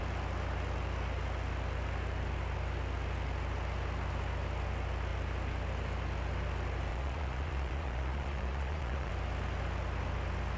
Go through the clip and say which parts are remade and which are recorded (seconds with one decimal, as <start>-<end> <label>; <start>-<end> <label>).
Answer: 0.0-6.9 recorded; 6.9-9.1 remade; 9.1-10.6 recorded